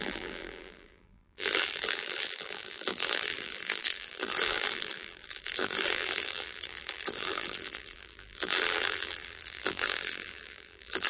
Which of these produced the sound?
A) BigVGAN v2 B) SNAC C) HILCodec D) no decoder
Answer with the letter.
A